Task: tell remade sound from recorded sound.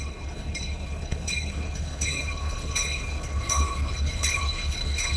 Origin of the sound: remade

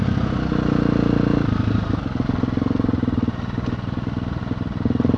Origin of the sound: recorded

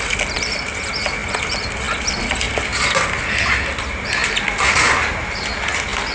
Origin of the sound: recorded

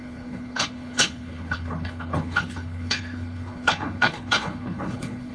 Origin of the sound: remade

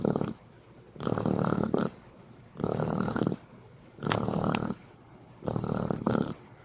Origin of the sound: remade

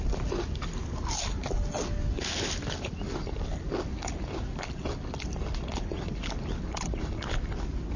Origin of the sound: recorded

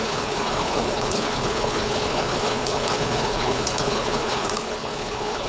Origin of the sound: remade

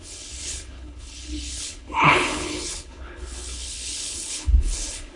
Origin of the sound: remade